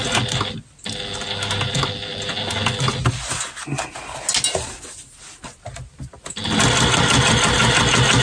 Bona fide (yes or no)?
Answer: yes